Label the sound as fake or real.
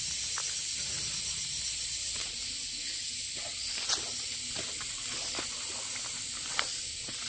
real